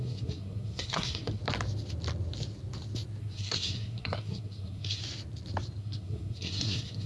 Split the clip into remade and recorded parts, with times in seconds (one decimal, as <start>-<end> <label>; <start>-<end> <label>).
0.0-1.4 remade; 1.4-3.2 recorded; 3.2-5.0 remade; 5.0-5.8 recorded; 5.8-7.1 remade